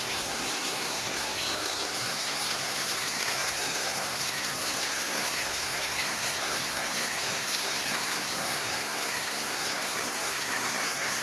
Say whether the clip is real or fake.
fake